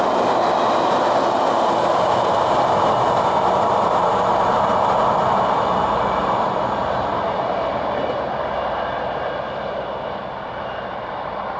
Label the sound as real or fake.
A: real